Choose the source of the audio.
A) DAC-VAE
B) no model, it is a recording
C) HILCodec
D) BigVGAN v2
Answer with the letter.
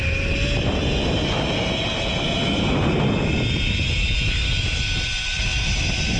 B